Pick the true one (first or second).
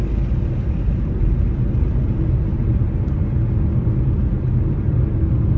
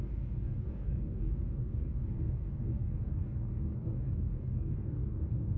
first